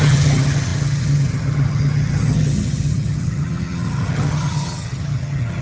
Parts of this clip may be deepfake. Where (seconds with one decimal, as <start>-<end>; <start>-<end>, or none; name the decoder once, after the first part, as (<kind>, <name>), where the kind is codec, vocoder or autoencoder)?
0.0-5.6 (vocoder, HiFi-GAN)